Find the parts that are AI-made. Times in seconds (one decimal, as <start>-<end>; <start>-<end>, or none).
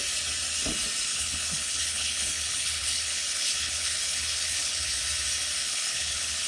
1.1-5.0; 5.6-6.5